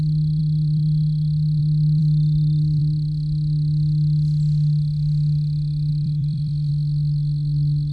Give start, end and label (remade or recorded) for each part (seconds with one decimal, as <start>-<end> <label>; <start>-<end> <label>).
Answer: 0.0-0.4 recorded; 0.4-1.6 remade; 1.6-5.9 recorded; 5.9-6.7 remade; 6.7-7.9 recorded